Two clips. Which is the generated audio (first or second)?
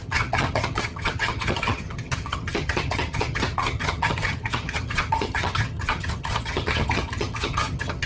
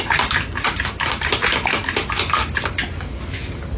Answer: first